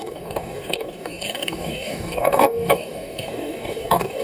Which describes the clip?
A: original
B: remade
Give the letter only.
B